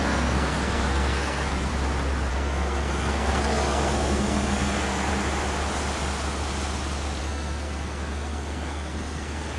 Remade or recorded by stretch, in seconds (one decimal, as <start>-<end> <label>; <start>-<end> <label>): 0.0-1.7 remade; 1.7-2.3 recorded; 2.3-5.1 remade; 5.1-7.2 recorded; 7.2-9.6 remade